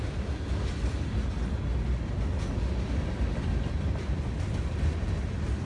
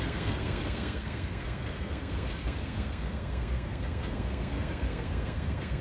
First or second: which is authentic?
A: first